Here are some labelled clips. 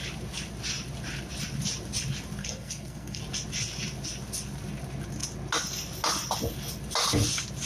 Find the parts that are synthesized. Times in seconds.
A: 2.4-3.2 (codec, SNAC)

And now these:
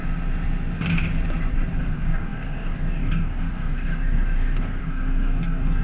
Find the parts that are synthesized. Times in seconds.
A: 1.8-5.8 (codec, DAC)